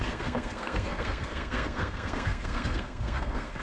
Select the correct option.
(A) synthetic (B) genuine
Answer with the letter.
A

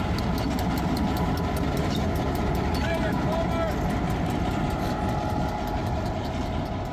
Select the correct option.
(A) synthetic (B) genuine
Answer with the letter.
B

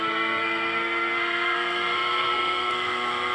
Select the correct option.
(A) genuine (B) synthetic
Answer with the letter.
B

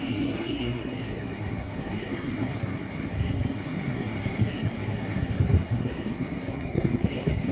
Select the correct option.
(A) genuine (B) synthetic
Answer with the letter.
B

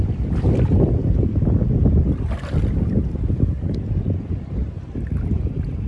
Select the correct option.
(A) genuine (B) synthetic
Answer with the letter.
A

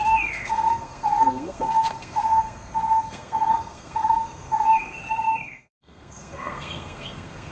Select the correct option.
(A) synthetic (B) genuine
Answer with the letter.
A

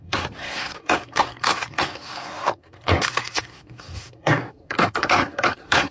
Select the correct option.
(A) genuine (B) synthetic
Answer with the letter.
B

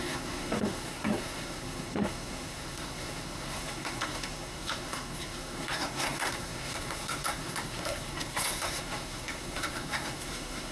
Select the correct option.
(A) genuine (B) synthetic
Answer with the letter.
B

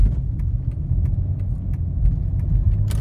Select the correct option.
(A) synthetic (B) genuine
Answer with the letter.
B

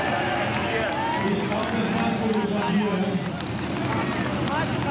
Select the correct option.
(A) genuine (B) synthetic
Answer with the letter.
A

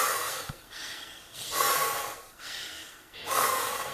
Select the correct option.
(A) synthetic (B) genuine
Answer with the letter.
A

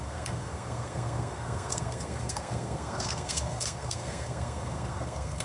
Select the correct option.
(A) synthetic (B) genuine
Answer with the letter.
A